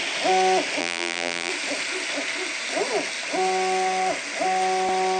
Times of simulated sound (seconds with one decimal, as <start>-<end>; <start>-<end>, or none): 0.8-1.5